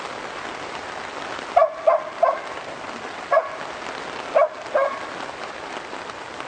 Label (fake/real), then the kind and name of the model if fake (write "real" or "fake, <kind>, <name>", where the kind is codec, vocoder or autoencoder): real